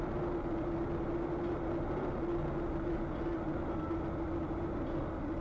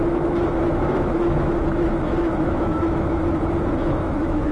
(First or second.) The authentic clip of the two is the first